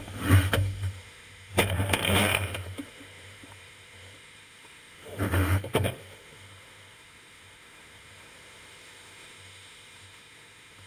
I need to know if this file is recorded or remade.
remade